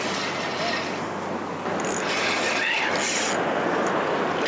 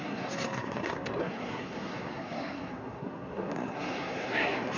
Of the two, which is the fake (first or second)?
second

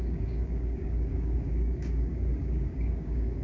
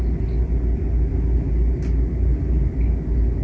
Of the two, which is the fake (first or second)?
first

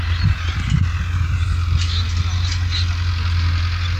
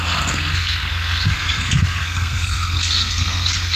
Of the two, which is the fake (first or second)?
second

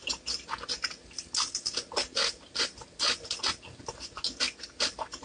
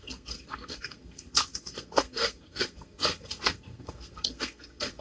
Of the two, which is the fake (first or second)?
second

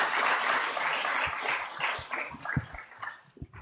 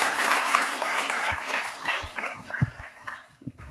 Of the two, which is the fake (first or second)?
second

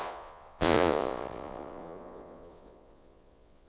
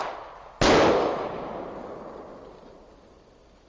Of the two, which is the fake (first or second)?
first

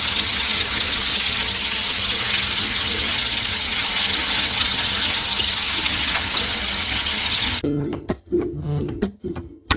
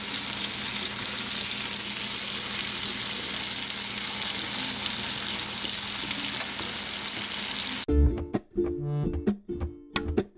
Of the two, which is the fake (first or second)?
first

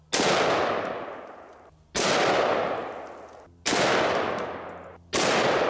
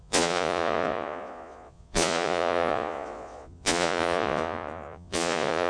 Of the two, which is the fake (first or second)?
second